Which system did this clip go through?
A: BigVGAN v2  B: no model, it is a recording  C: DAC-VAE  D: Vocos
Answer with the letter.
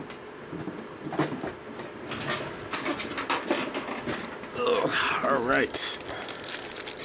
B